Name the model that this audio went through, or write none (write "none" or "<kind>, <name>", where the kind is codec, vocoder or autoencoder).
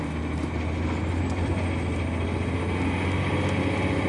none